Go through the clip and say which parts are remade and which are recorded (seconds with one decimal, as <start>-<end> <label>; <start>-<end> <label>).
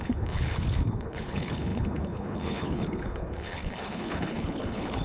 0.0-5.0 remade